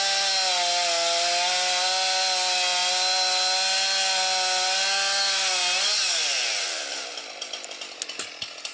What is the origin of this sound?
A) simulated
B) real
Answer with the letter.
B